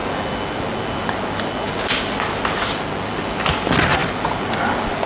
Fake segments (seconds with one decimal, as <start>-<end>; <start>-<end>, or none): none